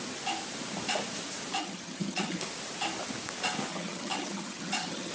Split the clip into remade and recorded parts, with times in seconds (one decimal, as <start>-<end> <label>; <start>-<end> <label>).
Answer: 0.0-1.6 recorded; 1.6-2.4 remade; 2.4-3.7 recorded; 3.7-5.1 remade